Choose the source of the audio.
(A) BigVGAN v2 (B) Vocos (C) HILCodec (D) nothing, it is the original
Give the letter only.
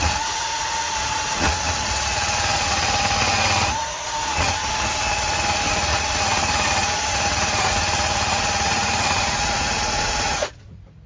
B